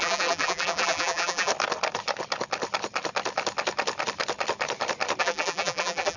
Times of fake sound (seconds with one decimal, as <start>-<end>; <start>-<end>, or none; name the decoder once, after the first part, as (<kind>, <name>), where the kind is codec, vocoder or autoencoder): 0.0-1.5 (vocoder, BigVGAN v2); 5.2-6.2